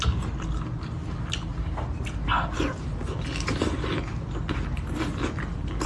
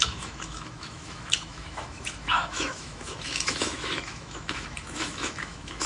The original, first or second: first